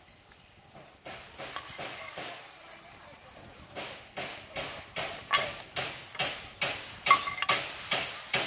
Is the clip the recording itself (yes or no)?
yes